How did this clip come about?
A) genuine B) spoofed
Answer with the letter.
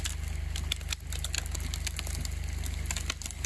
A